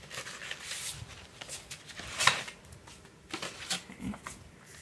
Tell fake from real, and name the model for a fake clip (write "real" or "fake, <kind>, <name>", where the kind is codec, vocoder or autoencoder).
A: real